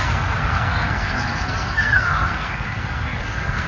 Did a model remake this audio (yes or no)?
yes